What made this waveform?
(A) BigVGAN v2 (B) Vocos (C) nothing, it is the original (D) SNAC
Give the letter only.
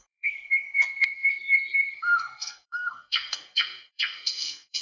D